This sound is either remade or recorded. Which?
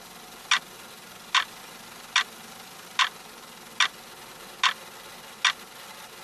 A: recorded